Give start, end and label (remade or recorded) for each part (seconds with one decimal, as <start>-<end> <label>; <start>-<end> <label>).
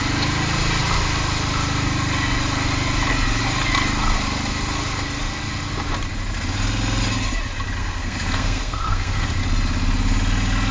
0.0-7.8 recorded; 7.8-9.4 remade; 9.4-10.7 recorded